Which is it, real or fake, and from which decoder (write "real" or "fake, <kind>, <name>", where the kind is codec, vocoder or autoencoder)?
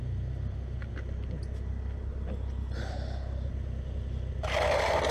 real